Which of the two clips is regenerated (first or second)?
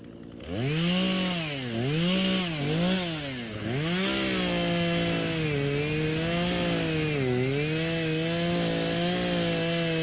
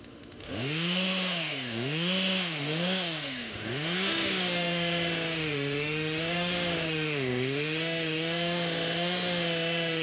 second